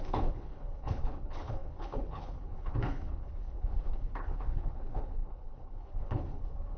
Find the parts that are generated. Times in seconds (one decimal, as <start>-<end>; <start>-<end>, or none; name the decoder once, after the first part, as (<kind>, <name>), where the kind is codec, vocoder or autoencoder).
0.0-6.8 (codec, HILCodec)